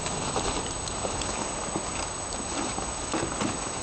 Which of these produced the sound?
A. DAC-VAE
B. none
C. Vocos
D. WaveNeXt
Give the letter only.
B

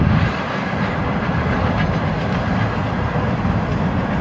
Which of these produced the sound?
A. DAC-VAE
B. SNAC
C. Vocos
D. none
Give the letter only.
D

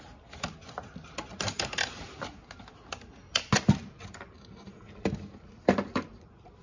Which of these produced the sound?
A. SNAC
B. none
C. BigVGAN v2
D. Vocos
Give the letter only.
B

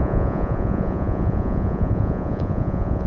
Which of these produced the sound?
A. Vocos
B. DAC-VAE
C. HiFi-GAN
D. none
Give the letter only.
A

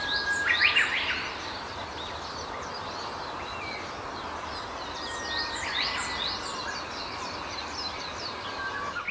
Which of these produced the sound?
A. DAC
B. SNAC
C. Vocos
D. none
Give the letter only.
D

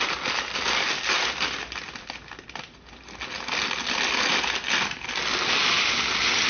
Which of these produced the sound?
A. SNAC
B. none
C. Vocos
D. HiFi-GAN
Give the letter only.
B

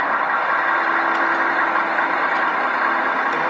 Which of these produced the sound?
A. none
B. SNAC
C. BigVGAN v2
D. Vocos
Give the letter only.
A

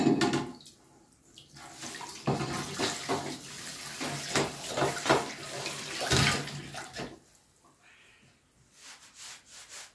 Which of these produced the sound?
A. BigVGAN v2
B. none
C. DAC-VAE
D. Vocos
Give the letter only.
B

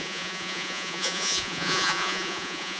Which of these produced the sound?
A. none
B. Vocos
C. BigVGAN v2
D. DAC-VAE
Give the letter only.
B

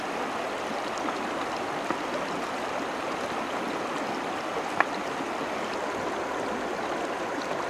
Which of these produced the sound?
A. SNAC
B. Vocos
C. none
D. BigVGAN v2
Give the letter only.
C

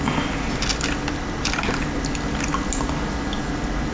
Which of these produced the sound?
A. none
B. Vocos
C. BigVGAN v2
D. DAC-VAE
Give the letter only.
A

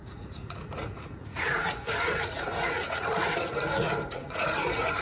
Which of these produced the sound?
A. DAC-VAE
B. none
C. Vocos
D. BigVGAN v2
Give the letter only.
C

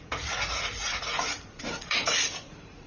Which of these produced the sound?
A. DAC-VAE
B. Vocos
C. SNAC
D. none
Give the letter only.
B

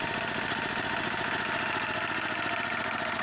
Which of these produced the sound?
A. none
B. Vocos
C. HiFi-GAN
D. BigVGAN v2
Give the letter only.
A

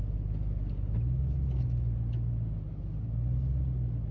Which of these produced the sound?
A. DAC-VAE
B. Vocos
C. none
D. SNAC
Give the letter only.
C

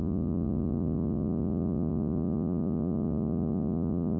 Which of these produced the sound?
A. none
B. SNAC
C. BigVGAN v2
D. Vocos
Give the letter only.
D